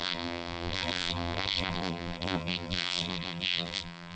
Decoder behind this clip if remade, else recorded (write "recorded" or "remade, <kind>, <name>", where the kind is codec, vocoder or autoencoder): remade, vocoder, BigVGAN v2